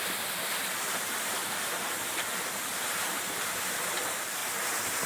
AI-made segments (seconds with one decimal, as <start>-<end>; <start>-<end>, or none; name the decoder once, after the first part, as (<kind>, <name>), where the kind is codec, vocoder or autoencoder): none